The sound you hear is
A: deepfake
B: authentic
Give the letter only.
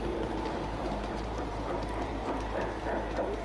A